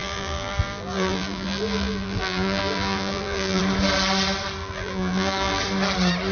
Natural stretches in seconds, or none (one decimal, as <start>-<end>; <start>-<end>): 3.6-4.6; 5.6-6.3